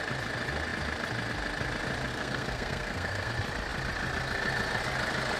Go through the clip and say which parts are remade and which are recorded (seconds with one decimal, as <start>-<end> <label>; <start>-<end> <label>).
0.0-2.1 recorded; 2.1-3.3 remade; 3.3-5.4 recorded